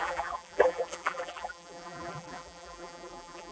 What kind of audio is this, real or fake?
fake